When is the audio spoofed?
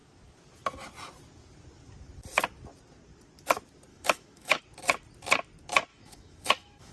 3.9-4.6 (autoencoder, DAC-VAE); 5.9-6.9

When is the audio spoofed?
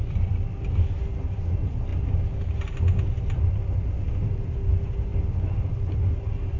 none